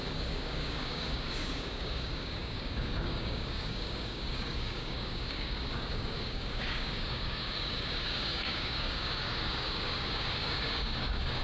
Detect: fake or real fake